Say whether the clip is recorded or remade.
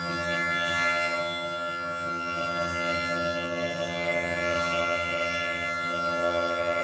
remade